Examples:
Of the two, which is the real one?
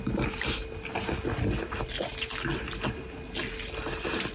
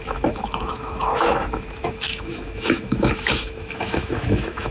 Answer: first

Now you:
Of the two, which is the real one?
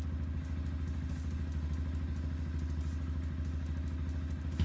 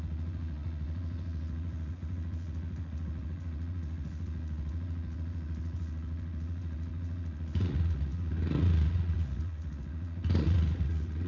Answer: first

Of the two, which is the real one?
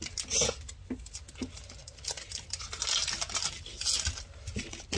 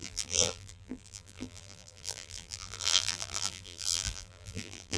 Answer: first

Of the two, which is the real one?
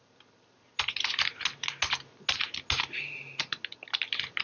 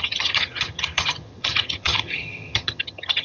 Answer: first